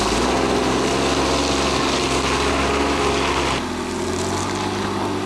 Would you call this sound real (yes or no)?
yes